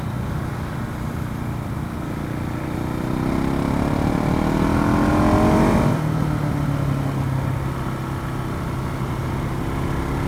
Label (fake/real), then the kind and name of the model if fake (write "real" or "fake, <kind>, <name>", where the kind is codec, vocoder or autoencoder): real